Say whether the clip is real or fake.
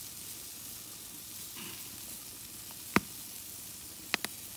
real